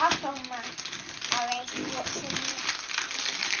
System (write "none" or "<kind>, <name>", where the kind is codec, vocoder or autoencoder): none